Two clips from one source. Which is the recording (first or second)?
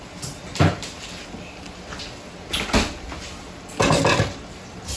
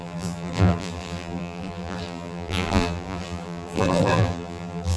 first